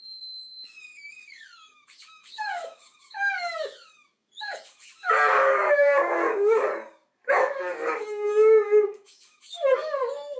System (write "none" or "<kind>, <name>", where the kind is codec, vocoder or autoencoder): codec, DAC